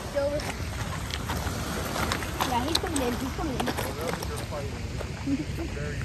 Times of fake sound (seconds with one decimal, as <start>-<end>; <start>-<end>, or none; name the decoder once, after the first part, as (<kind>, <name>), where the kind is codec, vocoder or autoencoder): none